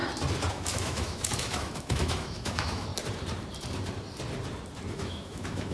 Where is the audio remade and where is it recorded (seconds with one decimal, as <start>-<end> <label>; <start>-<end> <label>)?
0.0-0.5 recorded; 0.5-2.9 remade; 2.9-4.9 recorded; 4.9-5.7 remade